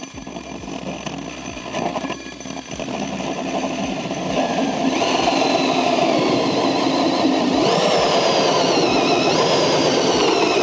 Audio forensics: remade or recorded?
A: recorded